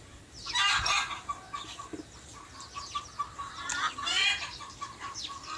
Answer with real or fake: real